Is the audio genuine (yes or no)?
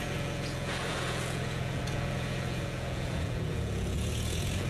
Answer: no